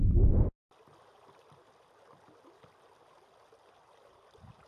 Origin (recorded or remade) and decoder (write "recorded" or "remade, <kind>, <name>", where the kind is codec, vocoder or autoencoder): recorded